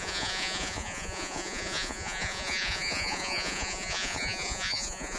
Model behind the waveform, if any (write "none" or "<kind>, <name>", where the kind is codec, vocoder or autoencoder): vocoder, Vocos